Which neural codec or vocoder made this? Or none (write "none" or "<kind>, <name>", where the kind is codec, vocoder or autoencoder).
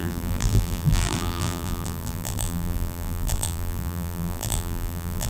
vocoder, BigVGAN v2